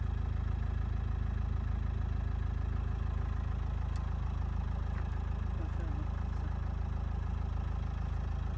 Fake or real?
real